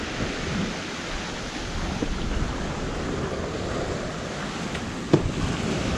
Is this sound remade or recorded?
recorded